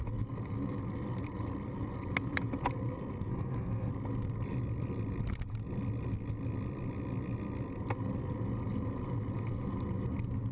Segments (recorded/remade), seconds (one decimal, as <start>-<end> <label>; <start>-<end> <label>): 0.0-3.3 recorded; 3.3-3.9 remade; 3.9-10.5 recorded